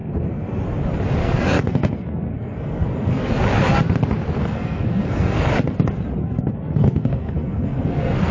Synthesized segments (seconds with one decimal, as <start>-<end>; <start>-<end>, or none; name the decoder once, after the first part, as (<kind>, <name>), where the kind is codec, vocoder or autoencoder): 0.0-0.6 (codec, SNAC); 1.2-3.3; 4.4-5.5; 6.2-8.3